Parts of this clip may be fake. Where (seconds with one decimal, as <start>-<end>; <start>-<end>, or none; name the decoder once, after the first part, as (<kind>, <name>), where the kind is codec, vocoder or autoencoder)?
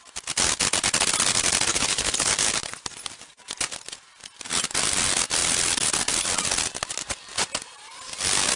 1.7-2.3 (codec, HILCodec)